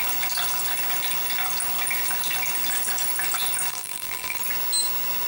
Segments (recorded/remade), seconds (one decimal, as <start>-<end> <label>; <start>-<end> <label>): 0.0-3.7 recorded; 3.7-4.4 remade; 4.4-5.3 recorded